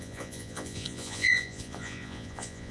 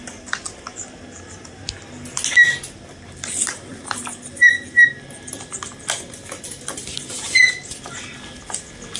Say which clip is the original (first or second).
second